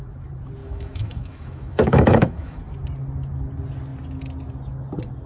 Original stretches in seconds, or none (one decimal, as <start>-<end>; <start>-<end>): 0.0-0.6; 2.6-5.3